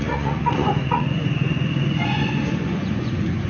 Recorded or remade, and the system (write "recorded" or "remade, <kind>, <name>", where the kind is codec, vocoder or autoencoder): remade, vocoder, Vocos